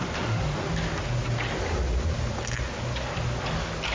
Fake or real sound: real